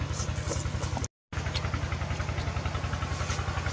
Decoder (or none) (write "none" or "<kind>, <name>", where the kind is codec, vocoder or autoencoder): none